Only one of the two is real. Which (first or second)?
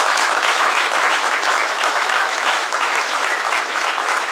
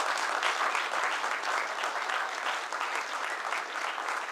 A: second